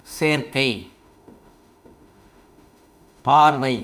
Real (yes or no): no